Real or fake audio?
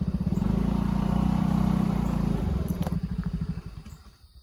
fake